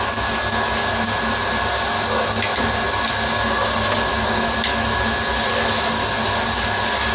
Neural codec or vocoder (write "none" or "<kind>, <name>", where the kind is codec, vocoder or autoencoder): none